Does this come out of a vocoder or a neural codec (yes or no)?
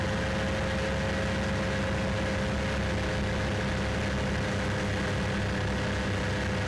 no